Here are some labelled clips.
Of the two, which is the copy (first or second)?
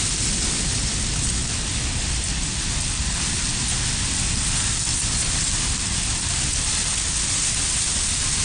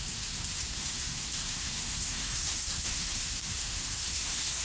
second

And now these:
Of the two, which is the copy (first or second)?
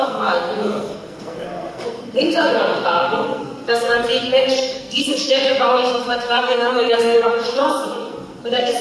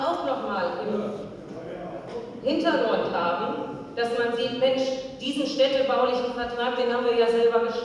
first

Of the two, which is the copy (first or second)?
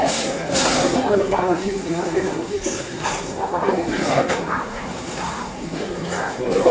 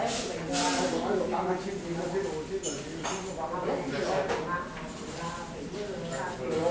first